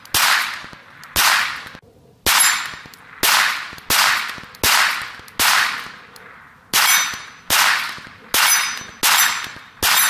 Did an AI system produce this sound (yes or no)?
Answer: no